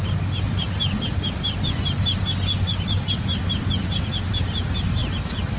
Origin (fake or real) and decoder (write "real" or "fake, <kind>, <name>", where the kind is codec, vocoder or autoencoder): real